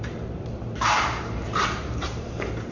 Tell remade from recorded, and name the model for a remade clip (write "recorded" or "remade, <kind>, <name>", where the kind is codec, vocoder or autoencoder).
remade, vocoder, BigVGAN v2